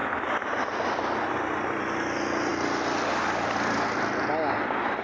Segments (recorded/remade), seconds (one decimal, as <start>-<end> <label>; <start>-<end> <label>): 0.0-5.0 recorded